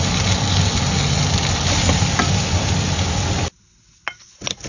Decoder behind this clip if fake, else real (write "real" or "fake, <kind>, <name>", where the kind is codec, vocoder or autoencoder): real